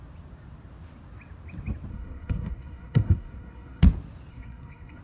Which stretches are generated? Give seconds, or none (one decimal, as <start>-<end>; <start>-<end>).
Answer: 1.9-3.8; 4.3-5.0